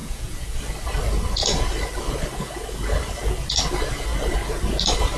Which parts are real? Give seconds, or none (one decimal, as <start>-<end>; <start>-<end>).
0.6-5.2